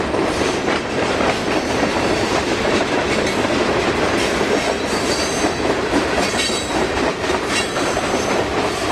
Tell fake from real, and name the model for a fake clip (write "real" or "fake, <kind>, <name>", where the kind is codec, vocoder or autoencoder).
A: fake, vocoder, BigVGAN v2